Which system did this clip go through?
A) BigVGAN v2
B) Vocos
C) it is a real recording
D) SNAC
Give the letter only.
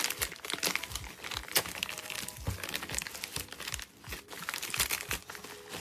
C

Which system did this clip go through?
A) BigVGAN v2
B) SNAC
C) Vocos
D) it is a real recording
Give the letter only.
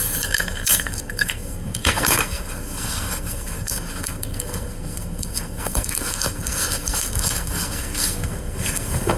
B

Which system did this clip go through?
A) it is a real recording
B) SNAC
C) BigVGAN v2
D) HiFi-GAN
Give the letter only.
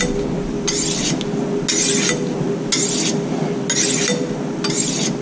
A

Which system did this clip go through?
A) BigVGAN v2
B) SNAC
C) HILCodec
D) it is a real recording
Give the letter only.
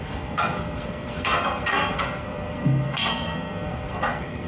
B